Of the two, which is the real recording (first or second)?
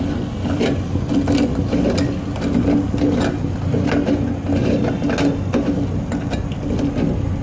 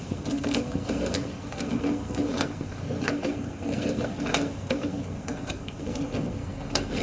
first